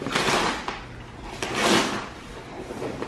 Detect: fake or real real